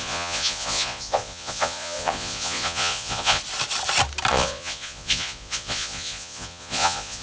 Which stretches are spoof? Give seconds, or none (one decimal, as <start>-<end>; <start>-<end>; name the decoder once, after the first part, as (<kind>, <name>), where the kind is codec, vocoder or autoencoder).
0.0-3.4 (vocoder, Vocos); 4.3-7.2